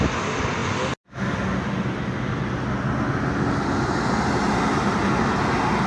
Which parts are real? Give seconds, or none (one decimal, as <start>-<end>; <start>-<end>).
0.0-5.9